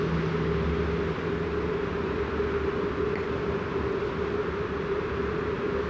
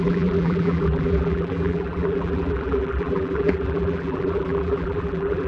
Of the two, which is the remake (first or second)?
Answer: second